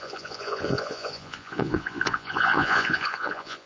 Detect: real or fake fake